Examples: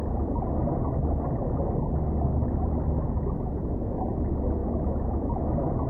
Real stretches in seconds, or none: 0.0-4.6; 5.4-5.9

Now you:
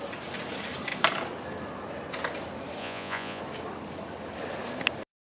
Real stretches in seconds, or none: 0.0-2.8; 3.4-5.3

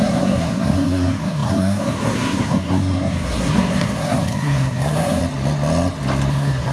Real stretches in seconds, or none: 5.2-6.3

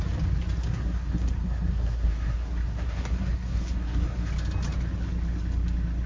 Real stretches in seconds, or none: 0.0-0.6; 4.3-6.1

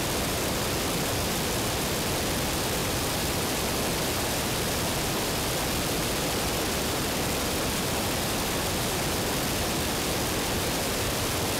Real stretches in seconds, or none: 0.0-11.6

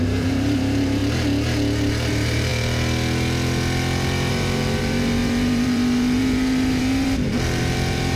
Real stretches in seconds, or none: 1.0-2.1; 2.5-4.3

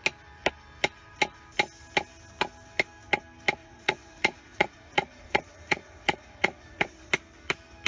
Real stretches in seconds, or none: 0.0-3.6; 7.1-7.9

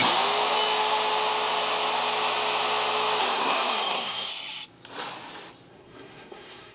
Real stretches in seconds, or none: 0.0-3.2; 4.3-5.7